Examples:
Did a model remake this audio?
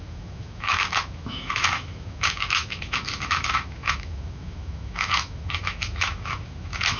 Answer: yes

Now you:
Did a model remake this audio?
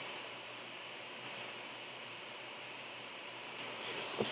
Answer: yes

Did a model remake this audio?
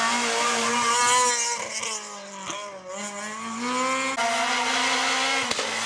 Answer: no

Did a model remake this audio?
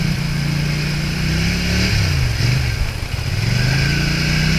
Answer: no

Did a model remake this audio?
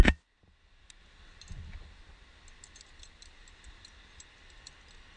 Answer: no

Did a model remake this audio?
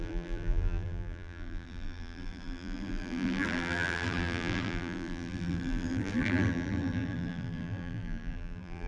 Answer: yes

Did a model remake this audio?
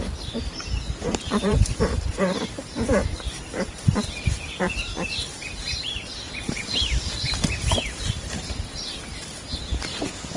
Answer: yes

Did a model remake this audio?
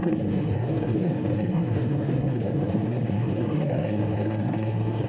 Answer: yes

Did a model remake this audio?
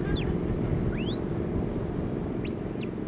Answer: no